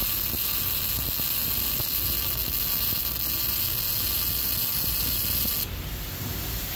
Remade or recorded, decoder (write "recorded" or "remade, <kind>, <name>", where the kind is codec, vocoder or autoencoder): recorded